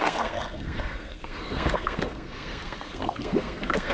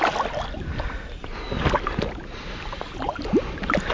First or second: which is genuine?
second